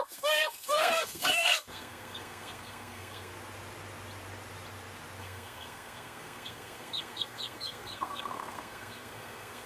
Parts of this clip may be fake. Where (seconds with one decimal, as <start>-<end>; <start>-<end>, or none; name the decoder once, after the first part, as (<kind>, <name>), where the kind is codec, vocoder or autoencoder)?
0.0-3.3 (codec, SNAC); 5.2-9.7